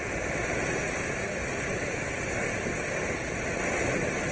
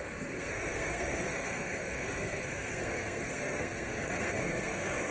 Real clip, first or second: first